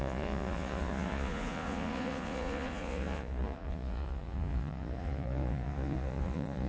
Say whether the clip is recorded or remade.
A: remade